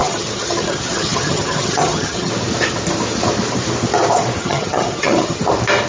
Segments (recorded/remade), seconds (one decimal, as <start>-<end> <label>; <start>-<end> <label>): 0.0-2.3 remade; 2.3-4.4 recorded; 4.4-5.4 remade; 5.4-5.9 recorded